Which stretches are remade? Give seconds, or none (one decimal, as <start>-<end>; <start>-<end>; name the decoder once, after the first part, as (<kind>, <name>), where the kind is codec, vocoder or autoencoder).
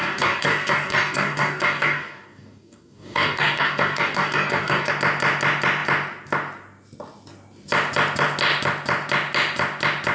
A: 0.0-4.9 (codec, DAC)